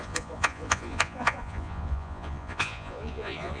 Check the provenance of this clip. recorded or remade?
remade